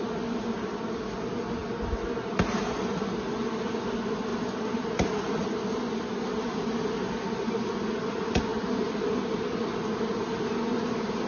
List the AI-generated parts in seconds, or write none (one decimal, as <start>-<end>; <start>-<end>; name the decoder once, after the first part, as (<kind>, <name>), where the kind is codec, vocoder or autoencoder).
none

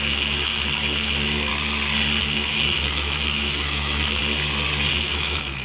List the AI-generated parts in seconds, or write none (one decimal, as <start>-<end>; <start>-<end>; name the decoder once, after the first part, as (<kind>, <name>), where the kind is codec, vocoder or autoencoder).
0.0-1.5 (autoencoder, DAC-VAE); 2.2-4.2; 4.9-5.6

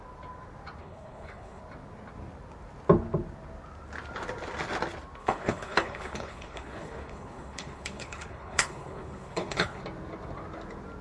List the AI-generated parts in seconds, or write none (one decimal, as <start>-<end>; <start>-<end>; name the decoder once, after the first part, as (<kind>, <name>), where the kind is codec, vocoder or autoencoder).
0.8-1.6 (codec, HILCodec); 5.2-9.8